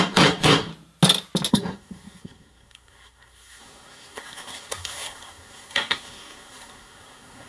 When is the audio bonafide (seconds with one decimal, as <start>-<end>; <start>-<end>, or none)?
0.7-1.5